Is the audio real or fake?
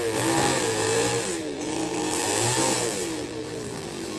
fake